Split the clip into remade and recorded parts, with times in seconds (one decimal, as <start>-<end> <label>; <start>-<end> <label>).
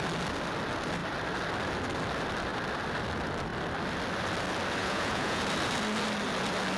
0.0-4.8 recorded; 4.8-5.4 remade; 5.4-6.8 recorded